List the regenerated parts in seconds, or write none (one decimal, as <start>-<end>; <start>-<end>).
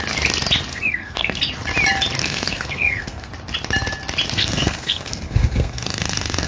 0.7-1.4; 2.2-3.3; 4.4-6.5